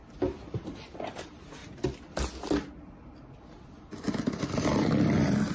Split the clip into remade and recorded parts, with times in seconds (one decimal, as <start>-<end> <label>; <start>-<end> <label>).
0.0-0.6 remade; 0.6-5.5 recorded